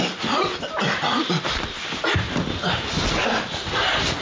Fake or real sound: real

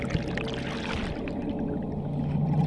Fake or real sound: real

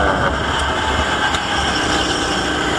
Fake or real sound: real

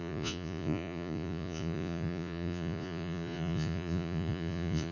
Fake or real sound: fake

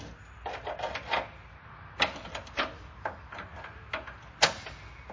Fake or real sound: real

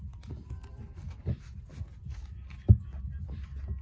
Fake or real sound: real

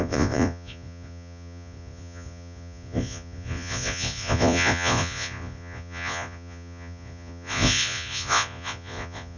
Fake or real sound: fake